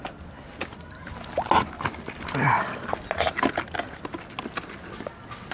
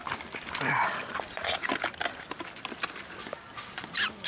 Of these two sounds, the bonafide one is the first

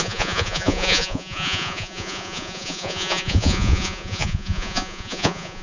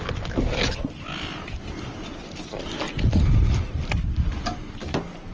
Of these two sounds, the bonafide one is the second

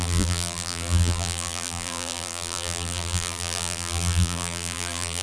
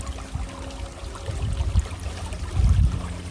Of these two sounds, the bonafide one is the second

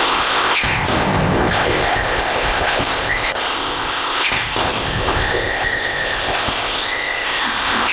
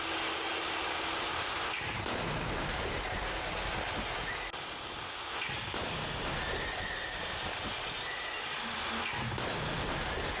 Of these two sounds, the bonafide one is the second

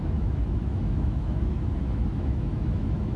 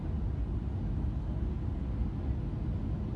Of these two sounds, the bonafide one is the second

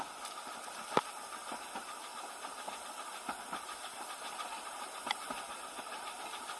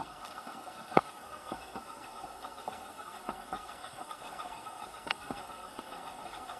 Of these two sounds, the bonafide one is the first